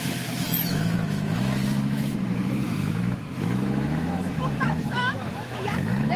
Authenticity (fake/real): fake